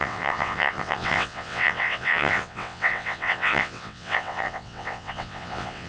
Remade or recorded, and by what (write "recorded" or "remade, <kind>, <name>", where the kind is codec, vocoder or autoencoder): remade, vocoder, WaveNeXt